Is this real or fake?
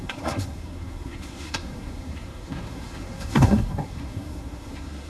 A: fake